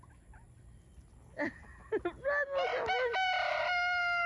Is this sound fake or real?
real